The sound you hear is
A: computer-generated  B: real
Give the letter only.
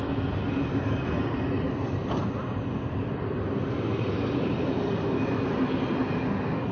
B